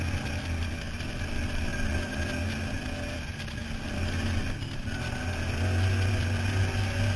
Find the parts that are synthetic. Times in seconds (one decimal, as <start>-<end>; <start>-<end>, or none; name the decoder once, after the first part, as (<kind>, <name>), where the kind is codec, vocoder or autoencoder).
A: none